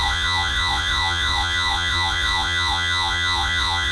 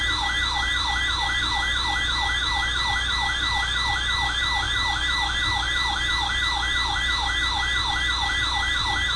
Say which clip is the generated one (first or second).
first